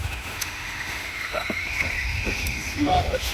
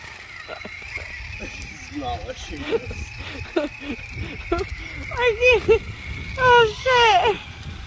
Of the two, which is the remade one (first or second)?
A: first